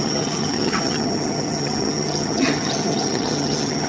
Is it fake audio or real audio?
fake